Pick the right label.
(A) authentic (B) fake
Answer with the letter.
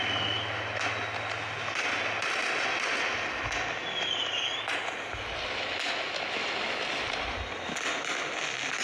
A